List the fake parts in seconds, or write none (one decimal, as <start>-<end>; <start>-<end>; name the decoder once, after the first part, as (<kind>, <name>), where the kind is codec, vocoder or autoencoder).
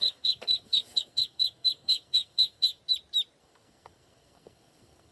0.0-2.8 (codec, SNAC); 3.4-5.1